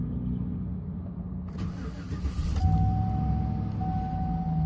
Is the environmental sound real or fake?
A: real